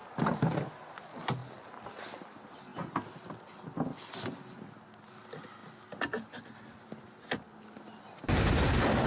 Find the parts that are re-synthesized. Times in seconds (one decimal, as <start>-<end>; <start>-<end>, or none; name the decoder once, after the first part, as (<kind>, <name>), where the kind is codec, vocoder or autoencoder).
none